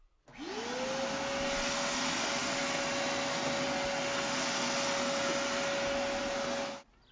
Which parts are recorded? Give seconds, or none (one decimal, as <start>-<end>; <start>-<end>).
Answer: 0.0-7.1